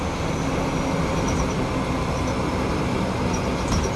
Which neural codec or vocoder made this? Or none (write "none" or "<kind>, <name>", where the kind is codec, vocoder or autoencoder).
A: none